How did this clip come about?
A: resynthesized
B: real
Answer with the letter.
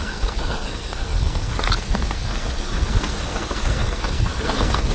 A